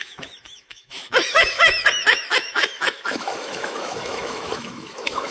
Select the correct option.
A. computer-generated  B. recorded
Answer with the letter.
A